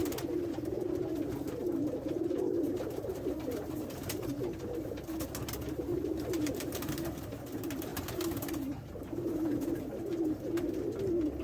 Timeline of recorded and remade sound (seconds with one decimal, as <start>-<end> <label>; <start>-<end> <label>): 0.0-1.6 recorded; 1.6-4.3 remade; 4.3-5.9 recorded; 5.9-6.9 remade; 6.9-7.9 recorded; 7.9-10.4 remade; 10.4-11.4 recorded

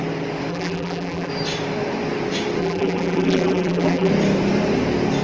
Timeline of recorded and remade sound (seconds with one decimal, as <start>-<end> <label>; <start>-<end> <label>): 0.0-0.5 recorded; 0.5-1.3 remade; 1.3-2.6 recorded; 2.6-4.1 remade; 4.1-5.2 recorded

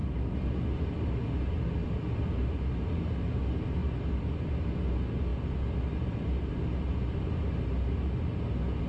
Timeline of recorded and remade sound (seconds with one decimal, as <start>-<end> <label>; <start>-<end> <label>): 0.0-0.7 remade; 0.7-1.8 recorded; 1.8-3.4 remade; 3.4-3.8 recorded; 3.8-4.5 remade; 4.5-5.3 recorded; 5.3-6.5 remade; 6.5-8.9 recorded

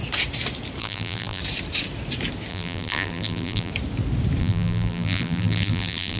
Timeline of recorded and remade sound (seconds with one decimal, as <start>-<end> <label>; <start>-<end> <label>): 0.0-0.8 recorded; 0.8-1.4 remade; 1.4-2.5 recorded; 2.5-3.7 remade; 3.7-4.4 recorded; 4.4-6.2 remade

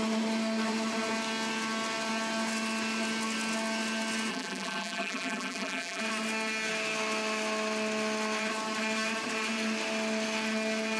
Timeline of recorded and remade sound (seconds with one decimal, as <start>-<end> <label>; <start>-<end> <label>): 0.0-4.3 recorded; 4.3-6.0 remade; 6.0-11.0 recorded

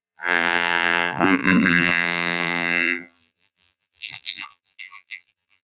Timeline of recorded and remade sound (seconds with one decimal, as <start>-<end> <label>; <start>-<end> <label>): 0.0-5.6 remade

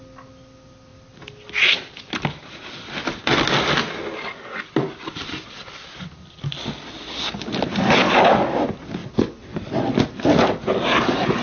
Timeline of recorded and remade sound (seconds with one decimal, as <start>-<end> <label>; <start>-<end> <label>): 0.0-3.8 recorded; 3.8-6.1 remade; 6.1-9.0 recorded; 9.0-10.0 remade; 10.0-11.4 recorded